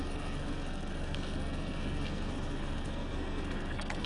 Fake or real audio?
fake